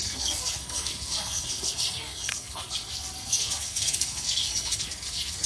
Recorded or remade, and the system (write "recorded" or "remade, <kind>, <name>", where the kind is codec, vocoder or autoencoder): remade, codec, SNAC